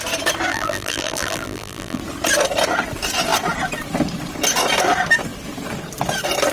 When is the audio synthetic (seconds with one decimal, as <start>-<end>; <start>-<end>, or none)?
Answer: 0.5-2.0